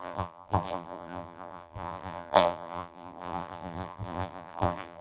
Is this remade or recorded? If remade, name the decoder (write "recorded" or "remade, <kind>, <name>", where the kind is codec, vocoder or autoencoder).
remade, vocoder, BigVGAN v2